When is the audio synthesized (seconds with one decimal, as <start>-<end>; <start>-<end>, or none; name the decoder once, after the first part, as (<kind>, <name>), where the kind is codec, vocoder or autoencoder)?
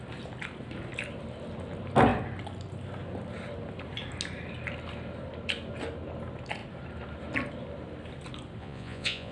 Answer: 8.6-9.3 (vocoder, Vocos)